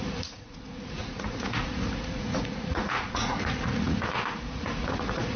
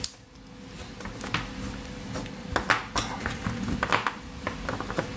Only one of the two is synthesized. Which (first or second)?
first